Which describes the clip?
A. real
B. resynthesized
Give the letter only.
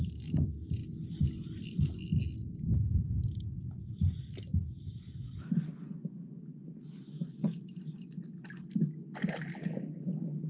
A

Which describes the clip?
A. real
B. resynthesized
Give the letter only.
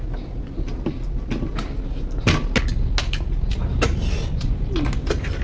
A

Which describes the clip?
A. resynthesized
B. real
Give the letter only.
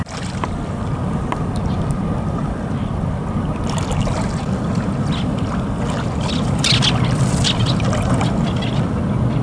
B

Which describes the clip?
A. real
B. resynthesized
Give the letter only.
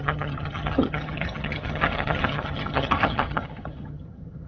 B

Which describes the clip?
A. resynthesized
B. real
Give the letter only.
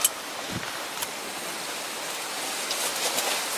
A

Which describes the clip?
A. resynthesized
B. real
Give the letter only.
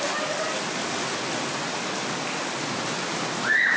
B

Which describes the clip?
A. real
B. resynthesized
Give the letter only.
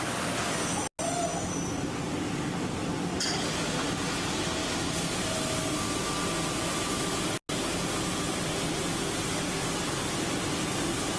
A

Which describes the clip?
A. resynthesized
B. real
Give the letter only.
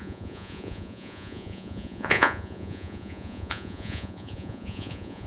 A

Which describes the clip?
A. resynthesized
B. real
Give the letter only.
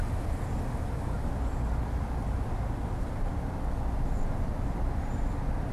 B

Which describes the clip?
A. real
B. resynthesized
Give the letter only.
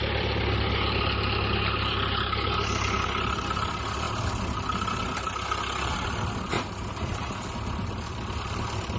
A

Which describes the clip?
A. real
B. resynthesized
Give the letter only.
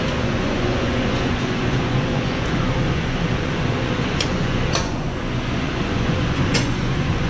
B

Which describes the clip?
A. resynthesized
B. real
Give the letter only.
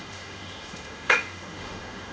A